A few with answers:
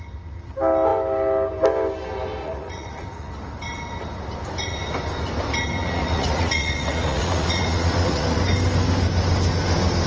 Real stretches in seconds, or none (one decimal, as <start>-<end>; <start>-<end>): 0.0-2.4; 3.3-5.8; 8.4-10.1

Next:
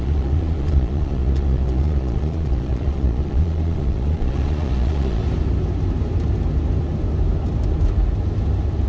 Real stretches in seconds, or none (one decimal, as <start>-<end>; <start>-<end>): 5.2-8.9

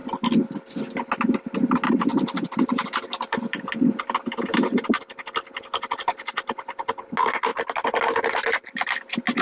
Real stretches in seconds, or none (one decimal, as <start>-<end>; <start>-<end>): 0.0-2.1; 4.8-9.4

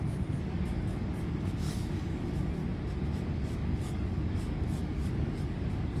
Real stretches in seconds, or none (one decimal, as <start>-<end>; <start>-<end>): 2.6-3.2